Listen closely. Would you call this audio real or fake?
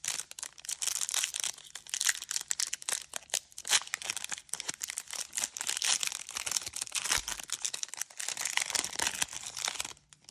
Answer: real